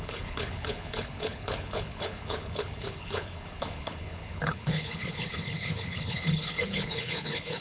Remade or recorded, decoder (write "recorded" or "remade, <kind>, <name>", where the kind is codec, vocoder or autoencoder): remade, codec, HILCodec